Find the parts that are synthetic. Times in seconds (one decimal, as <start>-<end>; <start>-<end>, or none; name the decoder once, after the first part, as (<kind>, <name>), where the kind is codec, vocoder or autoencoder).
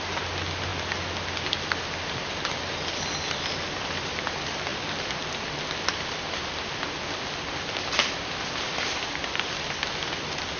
none